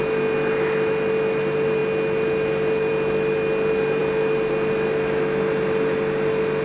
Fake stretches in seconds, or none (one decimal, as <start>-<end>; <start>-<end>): none